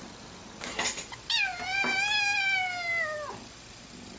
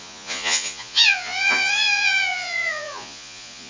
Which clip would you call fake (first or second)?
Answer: second